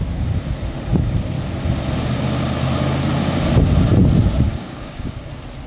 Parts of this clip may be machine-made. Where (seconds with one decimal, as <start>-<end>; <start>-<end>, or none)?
4.5-5.3